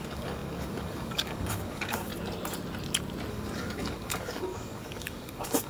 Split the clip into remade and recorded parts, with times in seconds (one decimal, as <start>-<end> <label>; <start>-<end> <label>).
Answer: 0.0-2.1 remade; 2.1-3.3 recorded; 3.3-5.7 remade